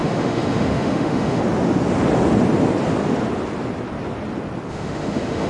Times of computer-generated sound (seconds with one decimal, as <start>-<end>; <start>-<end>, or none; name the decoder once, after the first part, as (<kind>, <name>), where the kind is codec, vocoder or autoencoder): 0.0-1.4 (autoencoder, DAC-VAE); 4.7-5.5